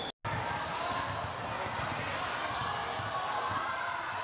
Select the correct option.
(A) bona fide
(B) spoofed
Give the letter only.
A